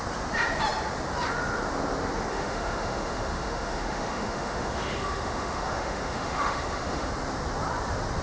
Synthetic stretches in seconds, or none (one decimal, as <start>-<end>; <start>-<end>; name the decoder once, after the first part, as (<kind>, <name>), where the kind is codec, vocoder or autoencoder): 2.3-7.1 (autoencoder, DAC-VAE)